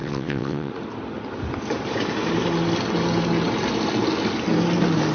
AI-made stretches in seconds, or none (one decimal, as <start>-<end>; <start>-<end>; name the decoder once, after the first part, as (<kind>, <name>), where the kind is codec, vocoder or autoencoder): 0.0-0.7 (vocoder, WaveNeXt)